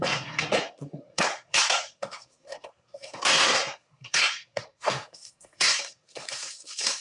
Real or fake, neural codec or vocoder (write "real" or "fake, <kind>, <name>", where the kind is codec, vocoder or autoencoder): fake, codec, SNAC